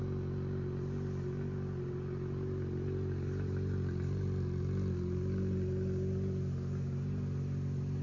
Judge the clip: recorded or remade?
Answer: recorded